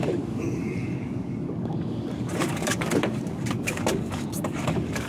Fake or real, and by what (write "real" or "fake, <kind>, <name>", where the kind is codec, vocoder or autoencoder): fake, codec, DAC